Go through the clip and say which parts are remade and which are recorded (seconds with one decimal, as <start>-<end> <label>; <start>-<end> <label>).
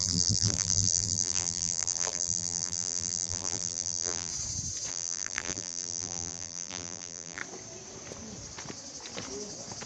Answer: 0.0-4.3 remade; 4.3-4.9 recorded; 4.9-7.4 remade; 7.4-9.9 recorded